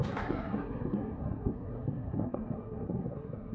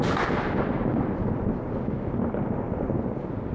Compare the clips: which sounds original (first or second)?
second